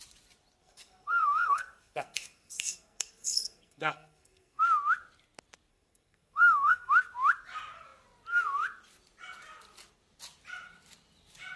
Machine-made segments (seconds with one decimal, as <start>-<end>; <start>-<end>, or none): 0.6-4.6; 5.7-6.9